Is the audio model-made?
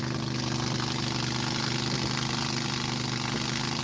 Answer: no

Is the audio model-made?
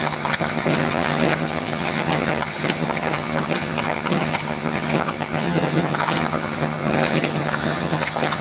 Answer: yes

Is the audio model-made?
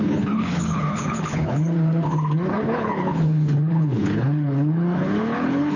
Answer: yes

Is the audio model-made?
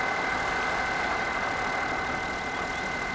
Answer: no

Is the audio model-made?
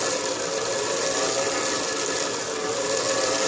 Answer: no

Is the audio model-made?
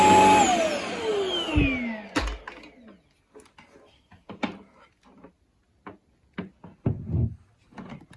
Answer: no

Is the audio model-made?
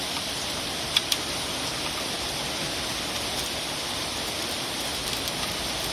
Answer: yes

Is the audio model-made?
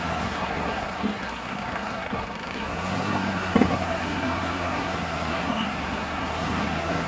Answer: yes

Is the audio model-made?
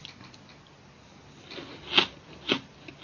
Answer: no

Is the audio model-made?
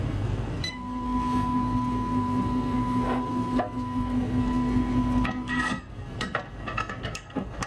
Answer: yes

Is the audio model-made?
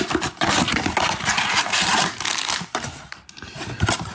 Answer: no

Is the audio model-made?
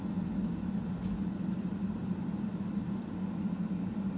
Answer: no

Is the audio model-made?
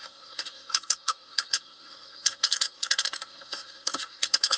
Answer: yes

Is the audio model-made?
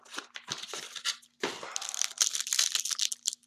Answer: no